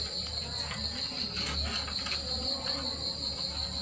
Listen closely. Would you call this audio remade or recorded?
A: recorded